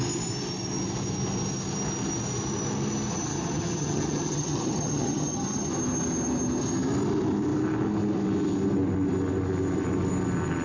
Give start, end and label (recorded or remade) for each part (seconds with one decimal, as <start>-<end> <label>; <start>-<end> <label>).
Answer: 0.0-3.1 recorded; 3.1-5.7 remade; 5.7-10.6 recorded